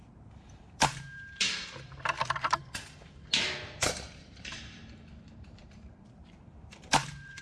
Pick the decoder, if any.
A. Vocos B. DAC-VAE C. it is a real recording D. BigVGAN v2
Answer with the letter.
D